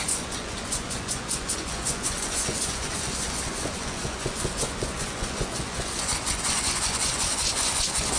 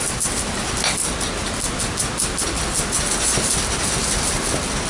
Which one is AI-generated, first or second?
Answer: first